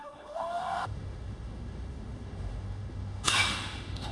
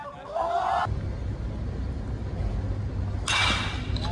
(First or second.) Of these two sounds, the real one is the second